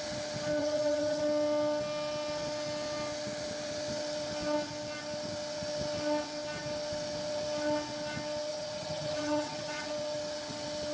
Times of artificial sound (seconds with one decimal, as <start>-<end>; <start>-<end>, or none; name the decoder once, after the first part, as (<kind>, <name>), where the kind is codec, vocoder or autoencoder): 0.6-1.2 (vocoder, HiFi-GAN); 8.5-9.9